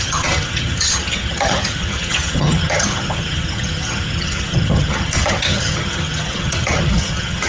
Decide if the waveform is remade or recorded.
remade